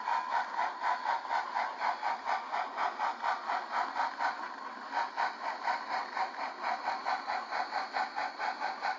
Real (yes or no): yes